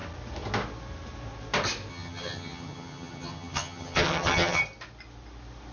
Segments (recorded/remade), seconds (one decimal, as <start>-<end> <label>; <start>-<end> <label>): 0.0-1.9 recorded; 1.9-4.6 remade; 4.6-5.7 recorded